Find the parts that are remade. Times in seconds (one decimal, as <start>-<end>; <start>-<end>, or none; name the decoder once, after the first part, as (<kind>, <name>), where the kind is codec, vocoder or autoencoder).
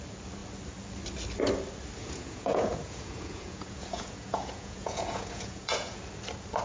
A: 2.0-6.0 (vocoder, Vocos)